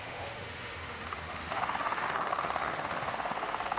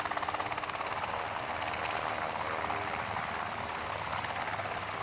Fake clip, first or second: first